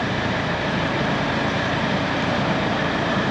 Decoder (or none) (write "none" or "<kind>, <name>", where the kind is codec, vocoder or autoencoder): vocoder, BigVGAN v2